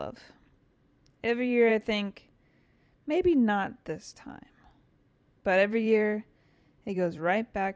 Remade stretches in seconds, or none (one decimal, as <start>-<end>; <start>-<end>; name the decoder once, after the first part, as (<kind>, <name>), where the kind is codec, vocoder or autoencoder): 0.0-1.7 (vocoder, BigVGAN v2); 5.2-7.8